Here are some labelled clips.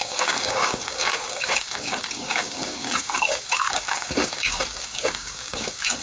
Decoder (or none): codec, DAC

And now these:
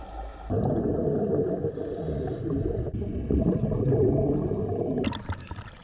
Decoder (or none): none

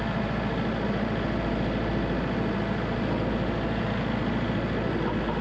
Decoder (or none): none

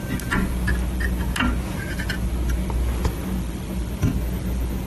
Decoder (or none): none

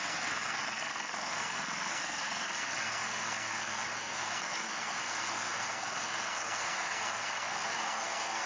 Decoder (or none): codec, SNAC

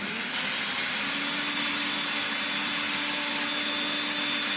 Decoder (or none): none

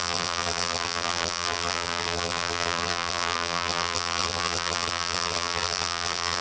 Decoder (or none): vocoder, BigVGAN v2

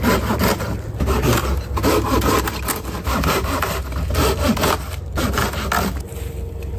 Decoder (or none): none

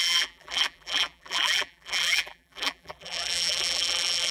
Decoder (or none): vocoder, BigVGAN v2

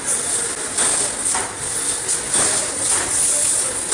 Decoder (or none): none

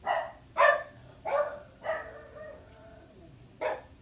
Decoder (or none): none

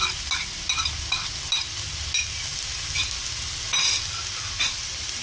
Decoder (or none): none